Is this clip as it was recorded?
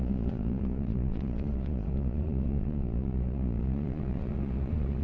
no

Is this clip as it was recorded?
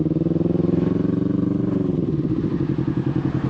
yes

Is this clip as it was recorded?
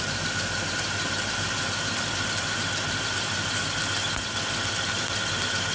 yes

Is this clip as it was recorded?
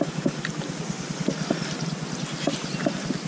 yes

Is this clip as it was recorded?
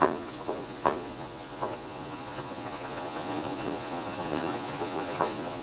no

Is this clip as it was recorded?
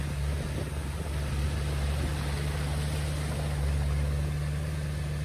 yes